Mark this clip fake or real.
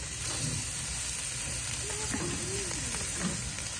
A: real